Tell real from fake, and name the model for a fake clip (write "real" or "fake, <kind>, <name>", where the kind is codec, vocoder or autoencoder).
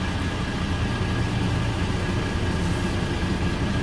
real